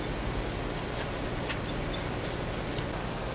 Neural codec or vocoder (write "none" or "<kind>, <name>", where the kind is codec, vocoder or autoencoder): none